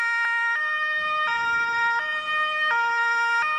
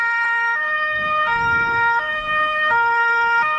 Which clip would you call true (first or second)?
first